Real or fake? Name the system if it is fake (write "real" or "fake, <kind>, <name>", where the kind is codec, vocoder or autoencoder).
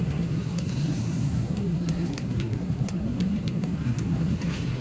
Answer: fake, codec, SNAC